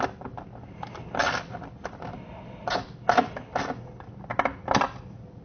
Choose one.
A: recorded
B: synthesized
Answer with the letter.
A